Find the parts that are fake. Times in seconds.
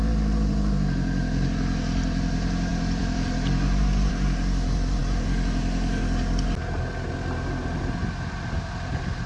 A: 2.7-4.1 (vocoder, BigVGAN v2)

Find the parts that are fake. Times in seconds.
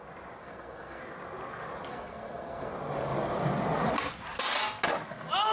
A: 0.4-1.0 (codec, SNAC); 1.9-2.7